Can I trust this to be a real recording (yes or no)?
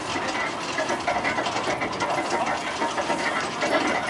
yes